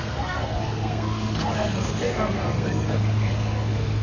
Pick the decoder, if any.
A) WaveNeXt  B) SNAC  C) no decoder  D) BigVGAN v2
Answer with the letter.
B